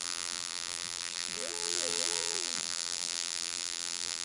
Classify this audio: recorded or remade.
remade